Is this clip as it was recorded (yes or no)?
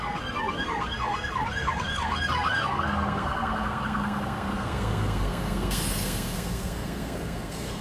no